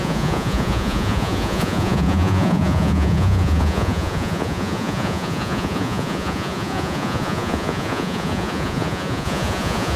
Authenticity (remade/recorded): remade